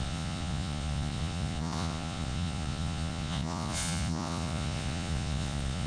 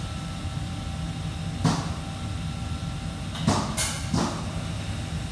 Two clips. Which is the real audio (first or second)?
second